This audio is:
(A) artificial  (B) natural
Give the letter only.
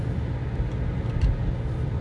B